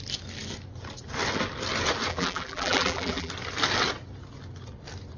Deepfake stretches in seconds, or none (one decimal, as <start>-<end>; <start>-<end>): 2.1-3.3